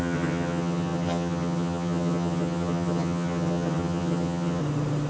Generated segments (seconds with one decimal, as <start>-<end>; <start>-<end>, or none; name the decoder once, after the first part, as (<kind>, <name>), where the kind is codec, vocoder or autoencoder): 0.0-4.6 (vocoder, HiFi-GAN)